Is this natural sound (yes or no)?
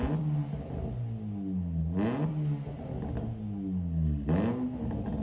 yes